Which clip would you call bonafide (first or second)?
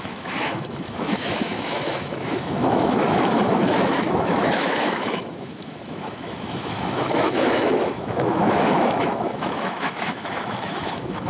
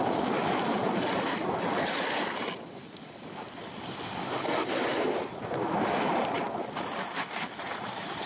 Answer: second